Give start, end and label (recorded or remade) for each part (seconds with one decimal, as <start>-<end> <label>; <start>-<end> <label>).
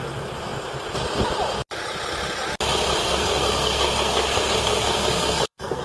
0.0-3.0 recorded; 3.0-5.8 remade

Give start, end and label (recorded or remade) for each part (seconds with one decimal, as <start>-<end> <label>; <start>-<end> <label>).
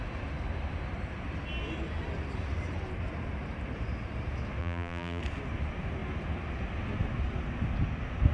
0.0-4.6 recorded; 4.6-5.2 remade; 5.2-8.3 recorded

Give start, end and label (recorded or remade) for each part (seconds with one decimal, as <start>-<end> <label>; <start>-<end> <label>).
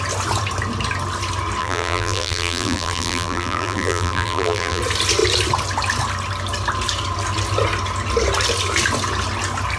0.0-1.6 recorded; 1.6-4.8 remade; 4.8-9.8 recorded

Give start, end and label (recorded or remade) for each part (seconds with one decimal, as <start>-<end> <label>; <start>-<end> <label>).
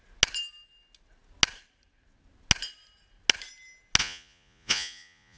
0.0-4.0 recorded; 4.0-5.4 remade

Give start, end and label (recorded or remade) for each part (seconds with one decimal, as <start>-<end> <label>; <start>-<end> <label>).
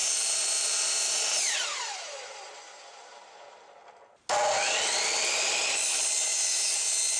0.0-3.7 remade; 3.7-6.3 recorded; 6.3-7.2 remade